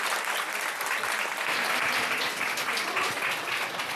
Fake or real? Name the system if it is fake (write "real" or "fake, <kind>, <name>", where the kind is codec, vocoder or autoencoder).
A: real